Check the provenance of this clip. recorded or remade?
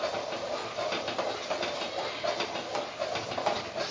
recorded